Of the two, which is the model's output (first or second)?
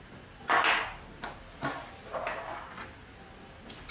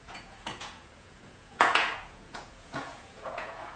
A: second